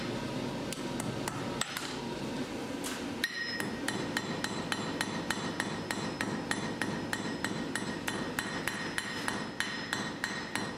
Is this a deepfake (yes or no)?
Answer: no